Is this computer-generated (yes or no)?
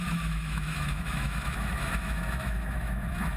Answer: yes